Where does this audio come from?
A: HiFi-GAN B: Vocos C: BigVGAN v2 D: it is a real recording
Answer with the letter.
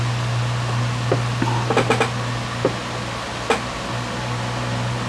D